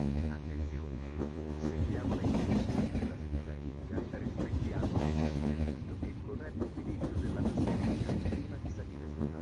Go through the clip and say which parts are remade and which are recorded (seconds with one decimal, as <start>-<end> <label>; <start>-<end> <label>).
0.0-1.8 remade; 1.8-3.2 recorded; 3.2-3.8 remade; 3.8-5.0 recorded; 5.0-5.8 remade; 5.8-8.9 recorded; 8.9-9.4 remade